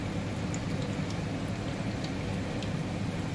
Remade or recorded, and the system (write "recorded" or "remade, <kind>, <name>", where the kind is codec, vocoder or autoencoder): recorded